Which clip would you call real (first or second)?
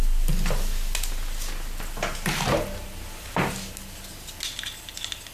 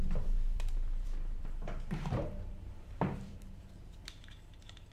first